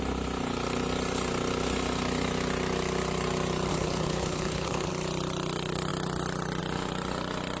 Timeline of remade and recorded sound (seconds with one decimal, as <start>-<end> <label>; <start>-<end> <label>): 0.0-3.7 recorded; 3.7-4.9 remade; 4.9-7.6 recorded